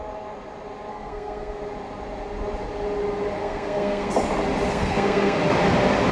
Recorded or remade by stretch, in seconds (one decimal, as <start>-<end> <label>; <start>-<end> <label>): 0.0-0.9 recorded; 0.9-1.6 remade; 1.6-3.4 recorded; 3.4-4.1 remade; 4.1-4.7 recorded; 4.7-5.4 remade; 5.4-6.1 recorded